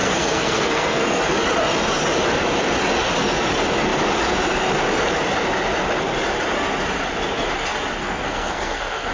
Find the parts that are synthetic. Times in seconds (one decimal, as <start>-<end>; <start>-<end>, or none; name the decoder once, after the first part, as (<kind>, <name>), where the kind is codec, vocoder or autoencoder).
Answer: 0.0-1.2 (codec, SNAC); 8.0-9.1